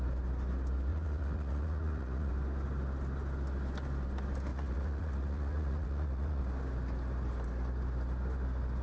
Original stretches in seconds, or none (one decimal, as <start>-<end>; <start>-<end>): 0.0-0.9; 2.3-4.5; 6.4-8.8